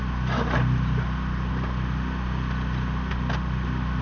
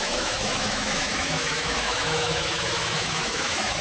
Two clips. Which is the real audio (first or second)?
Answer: first